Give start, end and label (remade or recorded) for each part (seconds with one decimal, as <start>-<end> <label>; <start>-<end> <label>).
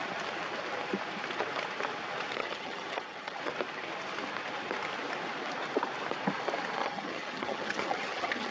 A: 0.0-2.4 recorded; 2.4-3.4 remade; 3.4-6.8 recorded; 6.8-8.5 remade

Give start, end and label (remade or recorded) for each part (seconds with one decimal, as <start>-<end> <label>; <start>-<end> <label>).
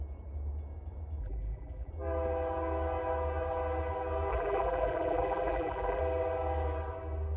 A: 0.0-1.2 recorded; 1.2-1.9 remade; 1.9-4.3 recorded; 4.3-6.0 remade; 6.0-7.4 recorded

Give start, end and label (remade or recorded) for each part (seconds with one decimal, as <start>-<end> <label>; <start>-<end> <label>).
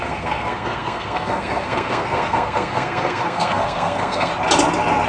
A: 0.0-4.3 remade; 4.3-5.1 recorded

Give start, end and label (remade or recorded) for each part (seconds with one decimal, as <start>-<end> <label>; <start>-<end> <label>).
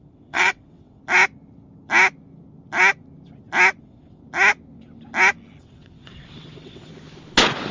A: 0.0-1.0 remade; 1.0-3.8 recorded; 3.8-4.2 remade; 4.2-5.6 recorded; 5.6-6.9 remade; 6.9-7.7 recorded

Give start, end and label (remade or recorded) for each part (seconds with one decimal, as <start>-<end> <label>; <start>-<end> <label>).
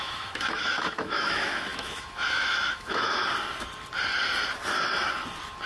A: 0.0-3.2 remade; 3.2-5.7 recorded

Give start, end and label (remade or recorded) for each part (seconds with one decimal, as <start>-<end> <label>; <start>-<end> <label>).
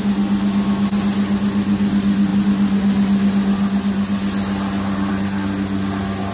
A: 0.0-6.3 recorded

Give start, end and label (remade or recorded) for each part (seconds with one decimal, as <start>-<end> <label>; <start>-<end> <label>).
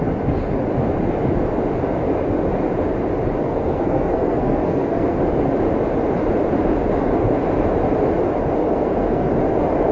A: 0.0-3.4 recorded; 3.4-5.2 remade; 5.2-8.6 recorded; 8.6-9.3 remade; 9.3-9.9 recorded